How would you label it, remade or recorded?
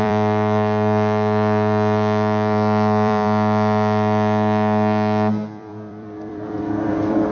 remade